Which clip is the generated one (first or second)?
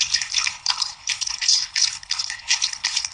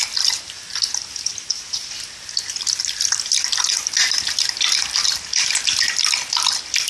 first